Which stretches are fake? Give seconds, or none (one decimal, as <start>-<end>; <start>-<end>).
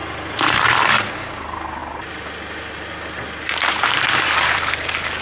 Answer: 0.0-1.1; 1.8-4.5